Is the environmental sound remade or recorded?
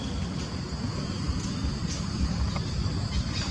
recorded